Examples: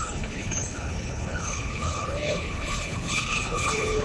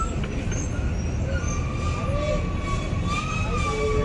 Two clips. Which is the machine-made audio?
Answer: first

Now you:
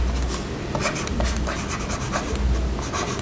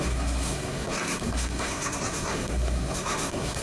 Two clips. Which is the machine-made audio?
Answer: second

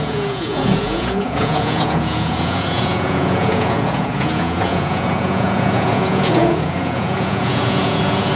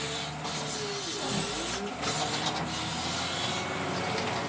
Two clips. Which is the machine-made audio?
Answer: first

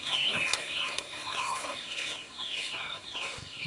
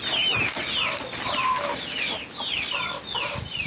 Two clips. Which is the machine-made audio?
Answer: first